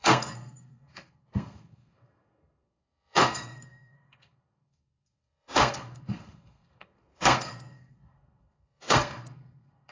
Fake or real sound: fake